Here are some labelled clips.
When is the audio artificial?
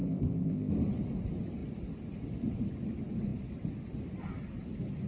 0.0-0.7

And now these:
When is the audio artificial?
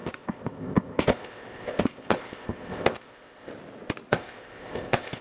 0.0-3.5; 4.1-5.2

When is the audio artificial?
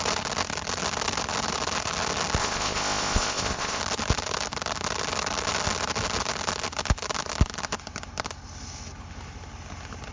2.4-3.8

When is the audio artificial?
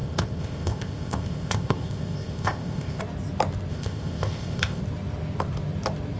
0.0-3.0; 3.7-4.8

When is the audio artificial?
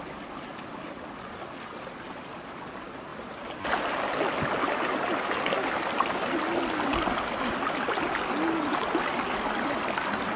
none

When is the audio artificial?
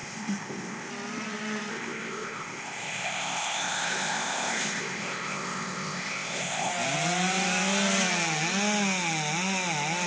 0.0-0.9; 1.7-6.7